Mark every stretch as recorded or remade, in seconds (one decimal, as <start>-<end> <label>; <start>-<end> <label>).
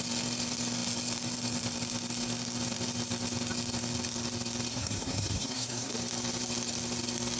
0.0-4.7 recorded; 4.7-5.9 remade; 5.9-7.4 recorded